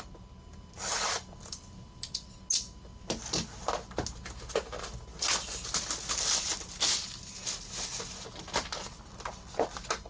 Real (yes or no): yes